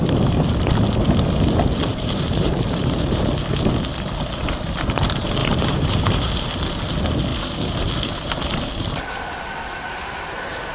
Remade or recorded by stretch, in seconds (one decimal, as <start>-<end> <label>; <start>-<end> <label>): 0.0-1.9 recorded; 1.9-3.2 remade; 3.2-5.4 recorded; 5.4-6.3 remade; 6.3-10.7 recorded